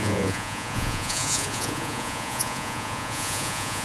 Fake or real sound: fake